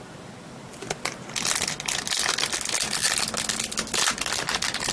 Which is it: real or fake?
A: real